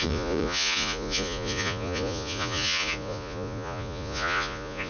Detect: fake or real fake